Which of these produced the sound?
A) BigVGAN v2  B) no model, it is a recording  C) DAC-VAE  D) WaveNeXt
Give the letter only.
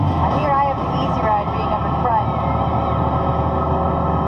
B